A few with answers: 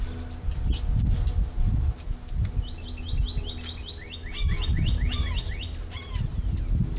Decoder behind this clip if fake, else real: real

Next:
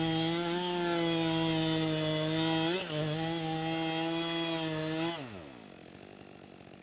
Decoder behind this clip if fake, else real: real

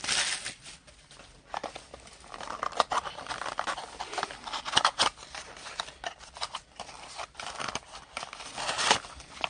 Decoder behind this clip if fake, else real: real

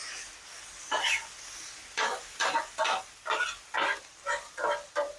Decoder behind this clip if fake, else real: fake, vocoder, BigVGAN v2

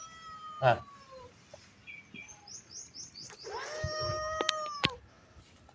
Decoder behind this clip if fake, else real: real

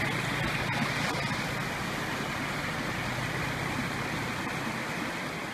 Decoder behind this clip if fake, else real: real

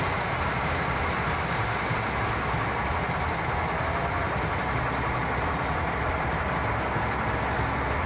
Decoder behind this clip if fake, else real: real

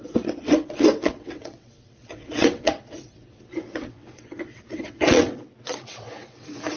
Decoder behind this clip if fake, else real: fake, vocoder, WaveNeXt